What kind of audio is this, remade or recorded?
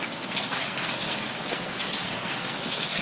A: remade